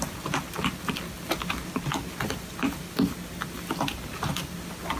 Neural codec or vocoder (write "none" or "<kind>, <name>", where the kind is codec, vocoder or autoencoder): none